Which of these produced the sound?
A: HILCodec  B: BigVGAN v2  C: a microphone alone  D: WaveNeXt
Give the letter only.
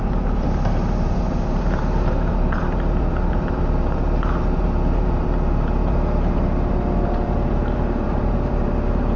B